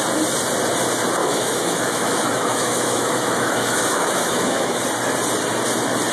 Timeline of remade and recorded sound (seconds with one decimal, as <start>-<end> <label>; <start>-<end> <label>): 0.0-1.2 recorded; 1.2-4.8 remade; 4.8-6.1 recorded

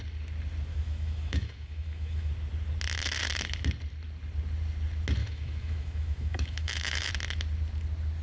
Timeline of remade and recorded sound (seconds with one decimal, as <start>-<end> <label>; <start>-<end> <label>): 0.0-0.7 recorded; 0.7-2.3 remade; 2.3-5.2 recorded; 5.2-7.1 remade; 7.1-8.2 recorded

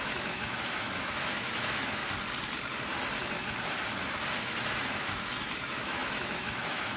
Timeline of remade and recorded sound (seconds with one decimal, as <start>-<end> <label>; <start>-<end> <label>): 0.0-2.0 remade; 2.0-4.4 recorded; 4.4-7.0 remade